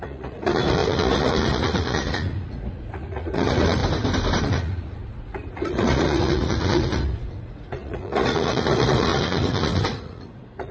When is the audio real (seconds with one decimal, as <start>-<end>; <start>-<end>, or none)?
3.8-4.4